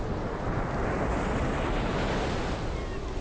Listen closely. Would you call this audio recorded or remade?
recorded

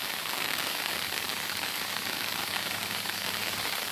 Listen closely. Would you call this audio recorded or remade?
remade